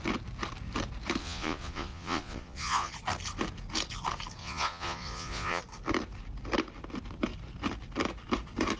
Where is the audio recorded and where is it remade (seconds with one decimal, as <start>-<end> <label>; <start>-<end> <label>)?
0.0-1.2 recorded; 1.2-2.9 remade; 2.9-4.4 recorded; 4.4-5.6 remade; 5.6-8.8 recorded

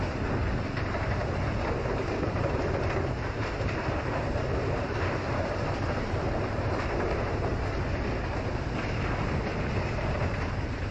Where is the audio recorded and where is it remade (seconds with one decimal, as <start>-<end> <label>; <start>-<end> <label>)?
0.0-1.2 remade; 1.2-1.7 recorded; 1.7-7.5 remade; 7.5-8.5 recorded; 8.5-9.5 remade; 9.5-10.1 recorded; 10.1-10.9 remade

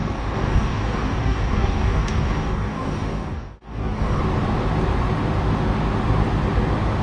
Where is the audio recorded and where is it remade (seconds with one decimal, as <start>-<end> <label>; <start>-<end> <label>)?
0.0-4.2 remade; 4.2-7.0 recorded

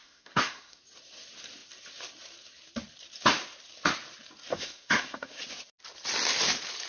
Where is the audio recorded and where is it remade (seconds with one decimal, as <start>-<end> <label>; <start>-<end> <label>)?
0.0-0.8 remade; 0.8-4.5 recorded; 4.5-5.4 remade; 5.4-6.9 recorded